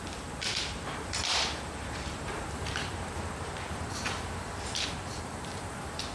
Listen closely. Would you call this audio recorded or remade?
remade